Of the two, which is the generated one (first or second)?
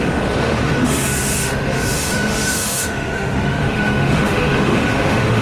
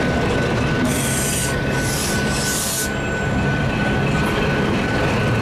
first